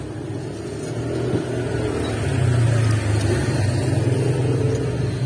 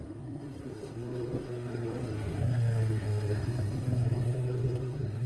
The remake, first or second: second